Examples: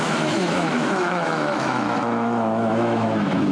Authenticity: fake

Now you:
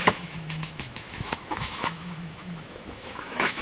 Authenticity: fake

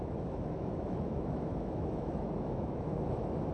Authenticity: fake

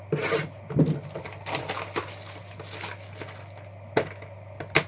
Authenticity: real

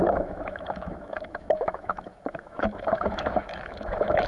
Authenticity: fake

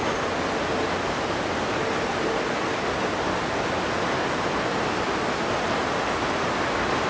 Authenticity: real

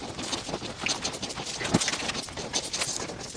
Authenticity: real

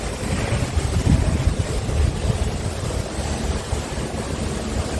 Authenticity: real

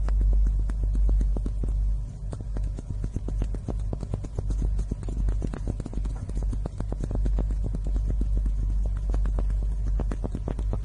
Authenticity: real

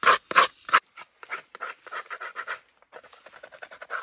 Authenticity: real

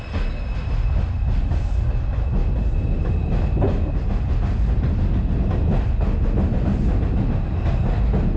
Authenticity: real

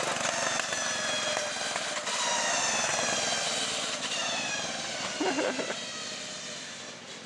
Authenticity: real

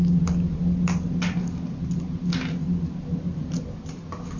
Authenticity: real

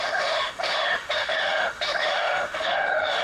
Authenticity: fake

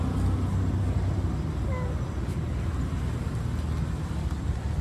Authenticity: real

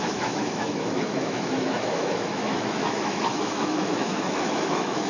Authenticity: fake